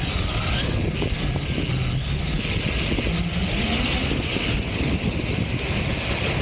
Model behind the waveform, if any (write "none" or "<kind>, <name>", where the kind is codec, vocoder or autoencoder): none